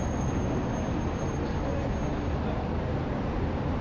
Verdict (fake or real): real